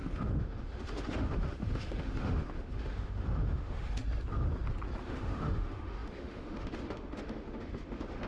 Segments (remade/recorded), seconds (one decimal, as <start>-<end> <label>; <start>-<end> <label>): 0.0-4.0 remade; 4.0-5.0 recorded; 5.0-8.3 remade